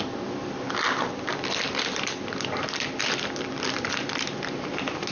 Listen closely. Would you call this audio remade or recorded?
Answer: remade